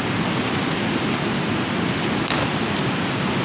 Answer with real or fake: real